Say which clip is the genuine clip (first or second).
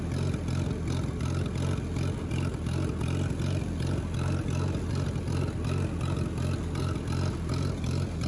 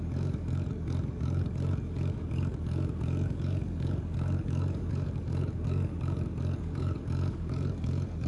first